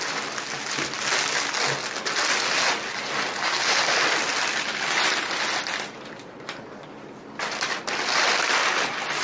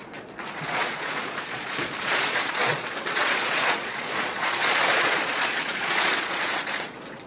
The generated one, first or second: second